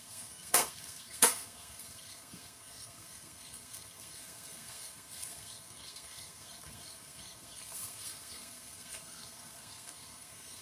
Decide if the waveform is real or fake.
fake